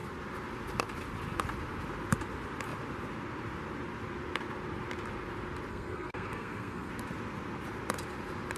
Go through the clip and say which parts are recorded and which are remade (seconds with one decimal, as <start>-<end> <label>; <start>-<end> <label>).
0.0-5.7 recorded; 5.7-6.9 remade; 6.9-8.6 recorded

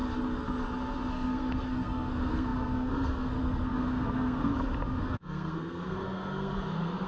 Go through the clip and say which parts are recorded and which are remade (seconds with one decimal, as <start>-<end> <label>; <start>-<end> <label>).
0.0-1.1 recorded; 1.1-4.5 remade; 4.5-5.0 recorded; 5.0-7.1 remade

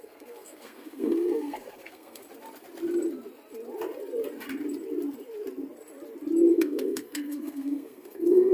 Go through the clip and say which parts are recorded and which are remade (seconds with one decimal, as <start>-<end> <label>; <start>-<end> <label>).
0.0-2.2 remade; 2.2-6.5 recorded; 6.5-8.5 remade